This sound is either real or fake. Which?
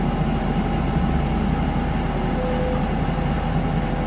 real